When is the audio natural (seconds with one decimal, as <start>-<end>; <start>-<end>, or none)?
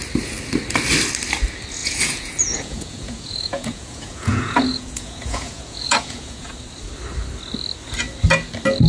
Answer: 0.0-1.8; 6.5-8.9